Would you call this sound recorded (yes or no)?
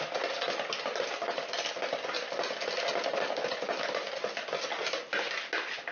yes